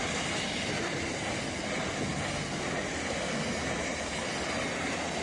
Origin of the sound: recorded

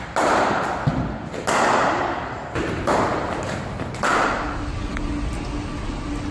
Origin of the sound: recorded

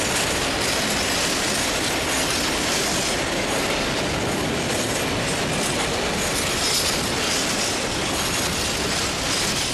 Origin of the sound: recorded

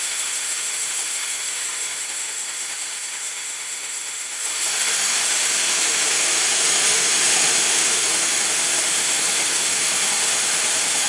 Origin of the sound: remade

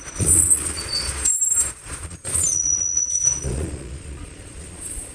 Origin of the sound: remade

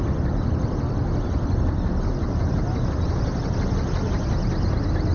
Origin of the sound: recorded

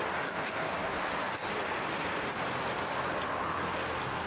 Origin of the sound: recorded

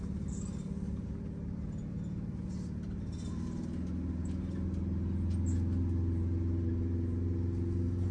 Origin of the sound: recorded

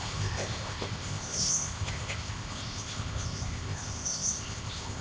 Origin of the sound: remade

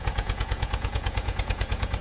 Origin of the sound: remade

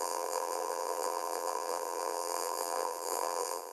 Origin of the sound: remade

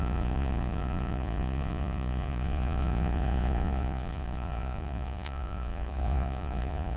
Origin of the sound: remade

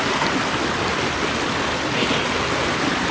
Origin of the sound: recorded